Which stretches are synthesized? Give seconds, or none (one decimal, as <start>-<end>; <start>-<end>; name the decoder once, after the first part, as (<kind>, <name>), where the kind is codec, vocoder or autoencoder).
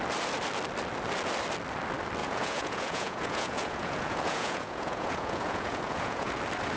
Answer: 2.2-6.3 (vocoder, Vocos)